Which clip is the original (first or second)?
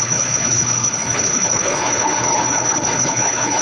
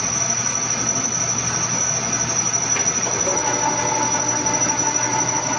second